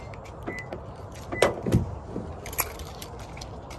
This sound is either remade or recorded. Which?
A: recorded